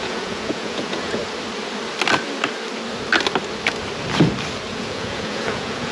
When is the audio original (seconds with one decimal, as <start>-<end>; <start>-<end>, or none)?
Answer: 1.2-4.7